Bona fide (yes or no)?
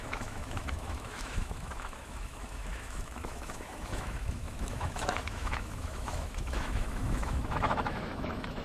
no